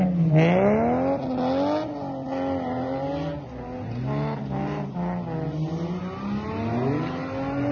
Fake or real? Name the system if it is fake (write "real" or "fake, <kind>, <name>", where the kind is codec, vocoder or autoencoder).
real